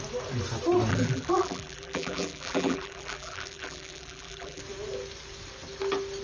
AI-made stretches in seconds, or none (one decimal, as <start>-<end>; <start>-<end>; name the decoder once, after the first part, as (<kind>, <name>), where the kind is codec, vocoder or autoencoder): 0.9-4.6 (vocoder, BigVGAN v2)